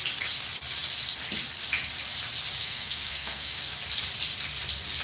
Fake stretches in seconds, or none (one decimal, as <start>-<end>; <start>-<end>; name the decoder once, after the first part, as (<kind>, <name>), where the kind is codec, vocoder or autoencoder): 2.6-3.7 (codec, SNAC)